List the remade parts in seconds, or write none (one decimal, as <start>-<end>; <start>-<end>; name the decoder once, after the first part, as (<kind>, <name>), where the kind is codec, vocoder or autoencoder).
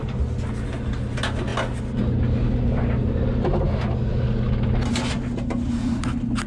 none